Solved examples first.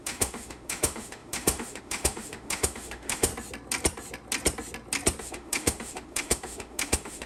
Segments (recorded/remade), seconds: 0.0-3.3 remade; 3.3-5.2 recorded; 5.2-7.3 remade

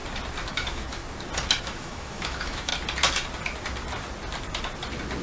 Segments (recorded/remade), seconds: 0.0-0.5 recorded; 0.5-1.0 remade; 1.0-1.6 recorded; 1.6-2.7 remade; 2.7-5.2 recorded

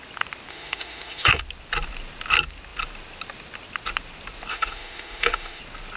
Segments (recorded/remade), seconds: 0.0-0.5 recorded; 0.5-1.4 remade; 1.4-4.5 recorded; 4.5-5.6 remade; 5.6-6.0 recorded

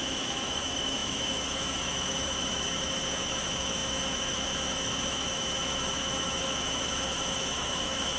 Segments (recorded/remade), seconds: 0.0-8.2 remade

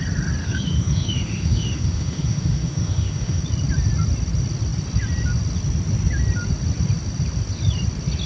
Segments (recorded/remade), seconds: 0.0-0.4 recorded; 0.4-3.4 remade; 3.4-8.3 recorded